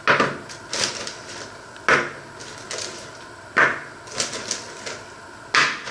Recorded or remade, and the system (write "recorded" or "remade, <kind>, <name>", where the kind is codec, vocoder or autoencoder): recorded